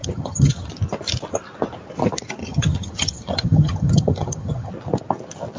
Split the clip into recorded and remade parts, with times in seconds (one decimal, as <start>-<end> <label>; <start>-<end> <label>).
0.0-0.7 remade; 0.7-2.4 recorded; 2.4-4.7 remade; 4.7-5.6 recorded